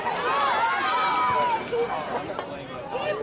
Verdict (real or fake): real